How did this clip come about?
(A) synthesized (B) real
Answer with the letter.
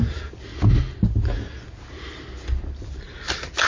B